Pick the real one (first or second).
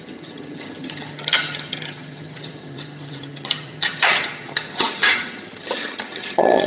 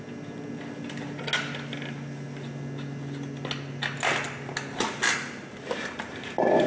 second